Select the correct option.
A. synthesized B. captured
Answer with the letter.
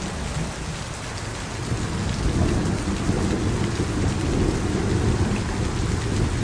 B